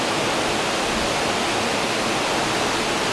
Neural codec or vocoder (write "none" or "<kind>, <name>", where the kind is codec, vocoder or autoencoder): none